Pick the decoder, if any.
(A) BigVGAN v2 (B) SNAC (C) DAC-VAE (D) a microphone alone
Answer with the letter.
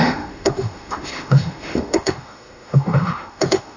C